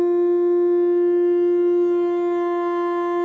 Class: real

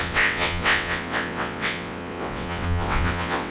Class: fake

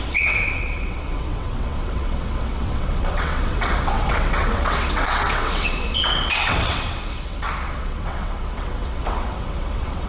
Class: fake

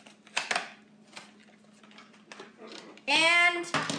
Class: real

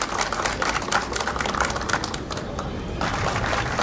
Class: real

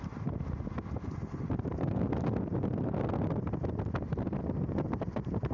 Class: real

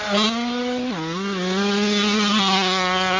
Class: real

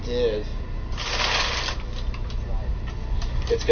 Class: real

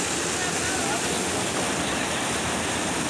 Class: real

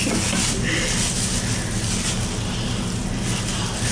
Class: real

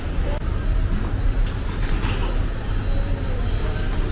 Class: real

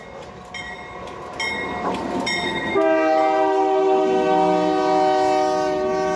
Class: real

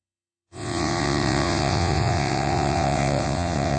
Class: fake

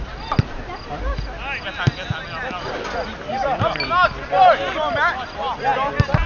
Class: real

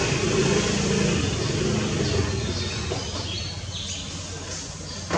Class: real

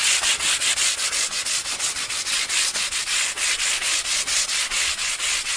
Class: fake